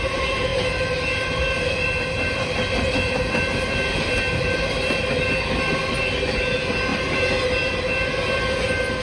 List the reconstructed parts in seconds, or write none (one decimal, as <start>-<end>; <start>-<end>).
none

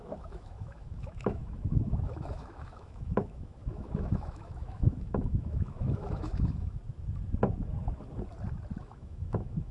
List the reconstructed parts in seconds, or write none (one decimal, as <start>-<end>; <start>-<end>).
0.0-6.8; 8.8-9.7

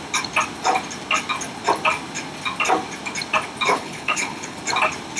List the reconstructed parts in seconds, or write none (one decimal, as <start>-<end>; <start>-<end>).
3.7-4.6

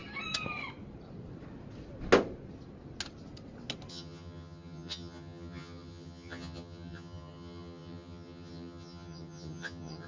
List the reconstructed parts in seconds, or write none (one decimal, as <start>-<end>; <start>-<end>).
3.9-10.1

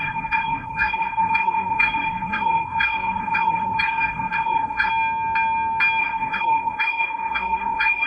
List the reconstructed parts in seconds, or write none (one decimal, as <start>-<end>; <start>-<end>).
0.0-4.9; 6.0-8.1

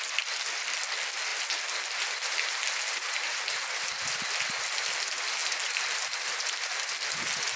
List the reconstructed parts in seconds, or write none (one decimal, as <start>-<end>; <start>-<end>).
none

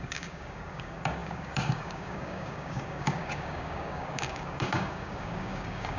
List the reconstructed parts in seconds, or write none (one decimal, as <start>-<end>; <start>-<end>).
0.0-6.0

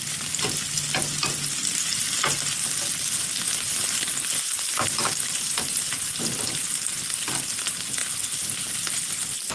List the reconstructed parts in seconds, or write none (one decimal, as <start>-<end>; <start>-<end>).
none